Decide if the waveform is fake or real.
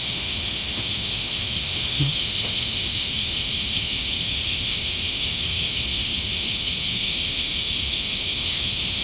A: fake